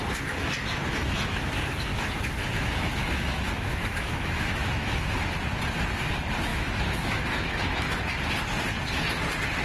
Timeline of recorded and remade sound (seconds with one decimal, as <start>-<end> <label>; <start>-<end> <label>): 0.0-0.9 recorded; 0.9-1.5 remade; 1.5-1.9 recorded; 1.9-5.3 remade; 5.3-6.5 recorded; 6.5-8.0 remade; 8.0-9.6 recorded